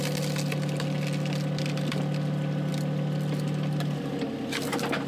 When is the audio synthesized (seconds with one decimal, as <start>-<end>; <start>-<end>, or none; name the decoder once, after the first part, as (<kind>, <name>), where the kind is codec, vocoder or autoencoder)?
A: none